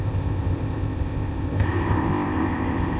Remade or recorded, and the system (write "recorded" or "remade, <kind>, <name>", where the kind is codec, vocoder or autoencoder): remade, codec, ZipCodec